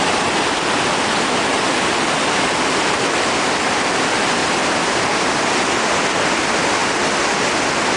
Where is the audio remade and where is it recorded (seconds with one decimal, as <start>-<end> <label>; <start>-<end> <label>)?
0.0-4.4 recorded; 4.4-5.0 remade; 5.0-8.0 recorded